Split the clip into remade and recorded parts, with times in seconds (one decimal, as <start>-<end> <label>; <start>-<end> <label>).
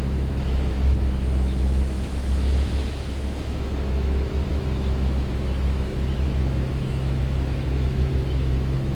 0.0-8.9 remade